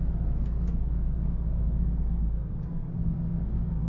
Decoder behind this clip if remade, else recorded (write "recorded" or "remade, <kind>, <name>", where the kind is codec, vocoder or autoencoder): remade, codec, SNAC